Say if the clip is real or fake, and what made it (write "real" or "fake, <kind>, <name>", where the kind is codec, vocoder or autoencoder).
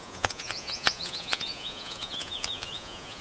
fake, vocoder, Vocos